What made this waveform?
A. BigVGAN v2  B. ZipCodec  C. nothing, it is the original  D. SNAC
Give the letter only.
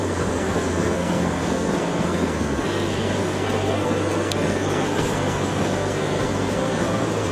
D